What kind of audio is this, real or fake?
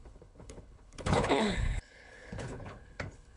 fake